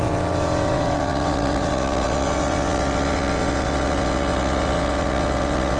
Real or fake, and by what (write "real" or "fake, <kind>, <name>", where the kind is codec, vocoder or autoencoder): fake, vocoder, WaveNeXt